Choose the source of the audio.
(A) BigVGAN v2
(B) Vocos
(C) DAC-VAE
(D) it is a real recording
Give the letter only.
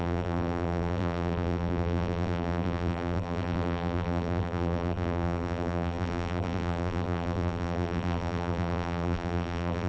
A